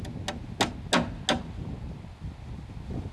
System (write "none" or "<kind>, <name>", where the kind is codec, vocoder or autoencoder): none